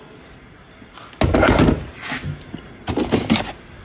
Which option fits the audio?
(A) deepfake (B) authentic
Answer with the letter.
B